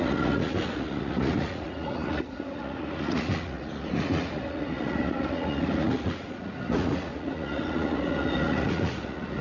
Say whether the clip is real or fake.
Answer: fake